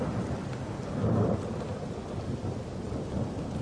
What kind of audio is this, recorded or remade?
recorded